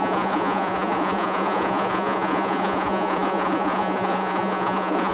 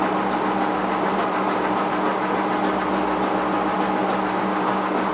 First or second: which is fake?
first